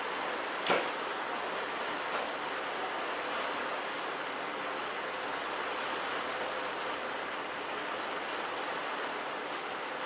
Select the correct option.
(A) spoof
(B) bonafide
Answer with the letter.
B